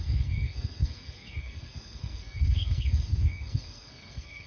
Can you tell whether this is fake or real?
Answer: fake